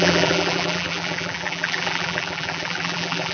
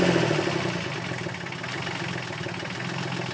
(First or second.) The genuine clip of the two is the second